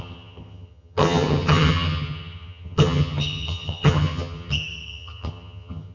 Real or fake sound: fake